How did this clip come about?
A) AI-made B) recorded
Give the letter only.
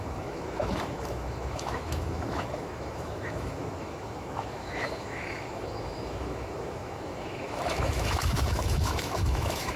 A